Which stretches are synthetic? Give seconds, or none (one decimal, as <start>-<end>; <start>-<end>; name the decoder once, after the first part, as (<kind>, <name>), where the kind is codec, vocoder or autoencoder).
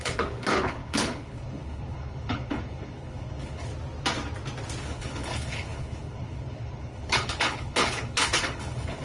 0.0-3.7 (codec, HILCodec); 4.8-9.0